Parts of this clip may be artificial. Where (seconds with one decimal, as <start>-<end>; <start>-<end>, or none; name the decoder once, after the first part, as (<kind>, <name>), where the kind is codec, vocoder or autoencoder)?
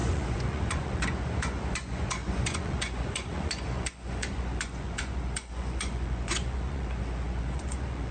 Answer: 0.0-8.1 (vocoder, Vocos)